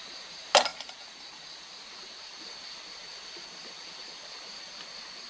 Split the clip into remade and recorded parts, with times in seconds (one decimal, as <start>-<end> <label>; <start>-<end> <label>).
0.0-0.7 recorded; 0.7-2.4 remade; 2.4-3.1 recorded; 3.1-4.7 remade; 4.7-5.3 recorded